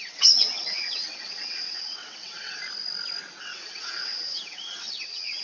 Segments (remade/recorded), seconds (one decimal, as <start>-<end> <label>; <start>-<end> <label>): 0.0-2.6 remade; 2.6-3.4 recorded; 3.4-5.4 remade